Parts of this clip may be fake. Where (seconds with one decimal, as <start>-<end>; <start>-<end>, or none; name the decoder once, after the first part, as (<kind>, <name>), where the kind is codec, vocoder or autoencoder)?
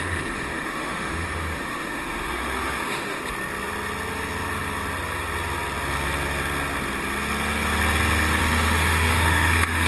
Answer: 0.0-3.2 (autoencoder, DAC-VAE); 8.4-9.9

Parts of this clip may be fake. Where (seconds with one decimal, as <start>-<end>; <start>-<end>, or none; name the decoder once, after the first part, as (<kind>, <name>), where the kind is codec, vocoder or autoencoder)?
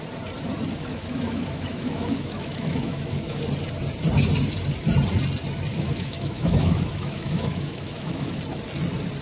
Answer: 0.7-3.4 (autoencoder, DAC-VAE); 5.7-8.4